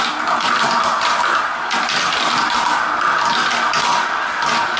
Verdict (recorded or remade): recorded